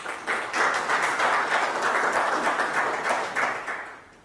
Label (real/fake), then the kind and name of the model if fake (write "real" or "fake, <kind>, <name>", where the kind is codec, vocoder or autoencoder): real